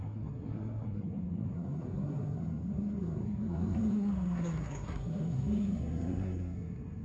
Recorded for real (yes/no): no